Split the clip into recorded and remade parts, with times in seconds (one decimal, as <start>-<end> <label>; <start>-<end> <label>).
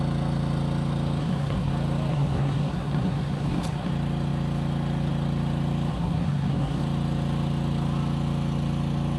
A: 0.0-1.2 recorded; 1.2-1.7 remade; 1.7-2.1 recorded; 2.1-3.9 remade; 3.9-5.9 recorded; 5.9-6.8 remade; 6.8-9.2 recorded